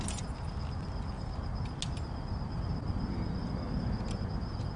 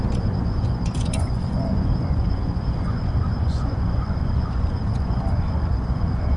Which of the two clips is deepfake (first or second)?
second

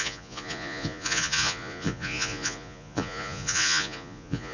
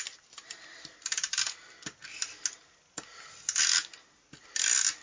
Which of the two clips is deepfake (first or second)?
first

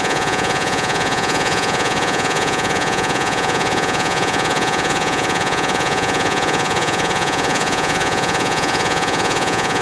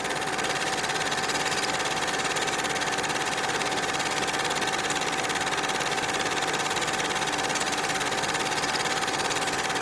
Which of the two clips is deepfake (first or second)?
first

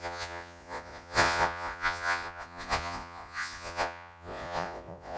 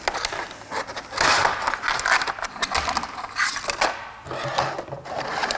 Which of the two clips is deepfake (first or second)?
first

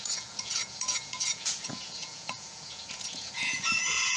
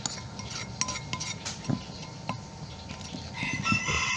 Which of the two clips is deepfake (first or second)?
first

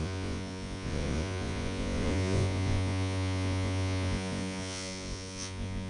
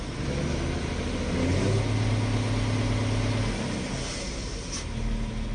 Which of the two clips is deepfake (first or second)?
first